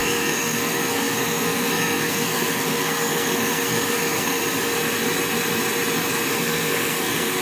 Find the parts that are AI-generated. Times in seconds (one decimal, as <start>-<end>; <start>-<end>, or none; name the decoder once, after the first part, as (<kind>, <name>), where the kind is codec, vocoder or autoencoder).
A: 0.0-4.4 (codec, SNAC); 6.3-7.4